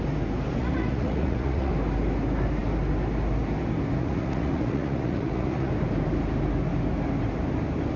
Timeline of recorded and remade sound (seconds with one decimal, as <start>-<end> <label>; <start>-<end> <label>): 0.0-0.6 recorded; 0.6-1.7 remade; 1.7-4.0 recorded; 4.0-5.7 remade; 5.7-8.0 recorded